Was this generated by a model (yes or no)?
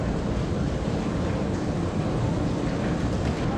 no